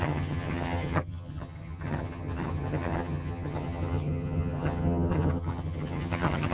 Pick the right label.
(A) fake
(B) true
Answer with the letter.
A